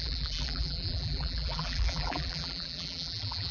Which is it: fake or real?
fake